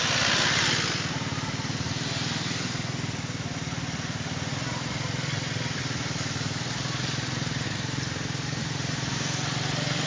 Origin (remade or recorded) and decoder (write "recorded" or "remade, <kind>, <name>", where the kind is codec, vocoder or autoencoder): recorded